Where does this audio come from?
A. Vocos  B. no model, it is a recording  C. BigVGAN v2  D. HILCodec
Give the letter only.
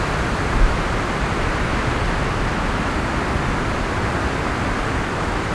B